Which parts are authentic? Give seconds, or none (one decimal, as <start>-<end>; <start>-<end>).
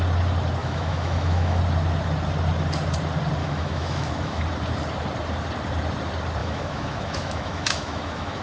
0.0-0.6; 1.6-3.4; 4.4-6.4